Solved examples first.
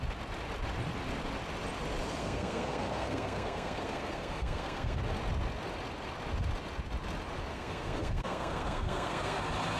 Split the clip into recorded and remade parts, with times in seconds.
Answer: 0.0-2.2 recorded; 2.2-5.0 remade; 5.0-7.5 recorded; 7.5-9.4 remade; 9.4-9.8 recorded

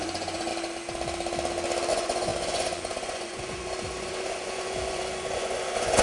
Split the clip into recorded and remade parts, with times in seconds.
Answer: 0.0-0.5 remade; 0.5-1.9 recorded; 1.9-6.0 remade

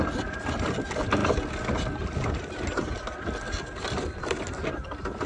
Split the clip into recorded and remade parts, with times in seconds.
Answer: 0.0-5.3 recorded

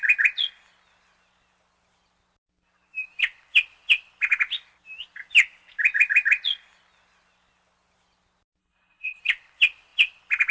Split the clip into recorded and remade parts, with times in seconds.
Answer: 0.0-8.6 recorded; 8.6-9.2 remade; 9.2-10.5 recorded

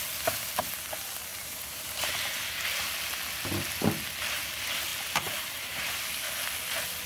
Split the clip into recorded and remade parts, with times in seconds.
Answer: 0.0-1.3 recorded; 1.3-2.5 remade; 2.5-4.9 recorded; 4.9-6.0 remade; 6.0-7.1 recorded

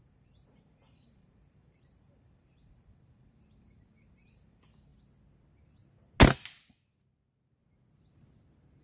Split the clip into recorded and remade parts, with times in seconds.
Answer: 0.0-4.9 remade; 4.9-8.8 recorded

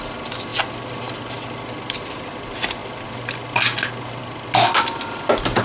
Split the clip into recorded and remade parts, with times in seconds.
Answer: 0.0-5.6 recorded

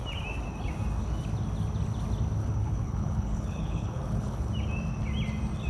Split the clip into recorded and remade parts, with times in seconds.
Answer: 0.0-2.4 recorded; 2.4-4.5 remade; 4.5-5.7 recorded